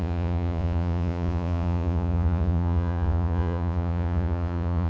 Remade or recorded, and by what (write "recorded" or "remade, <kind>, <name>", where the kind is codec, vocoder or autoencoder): remade, vocoder, Vocos